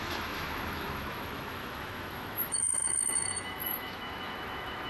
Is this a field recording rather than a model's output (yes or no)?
no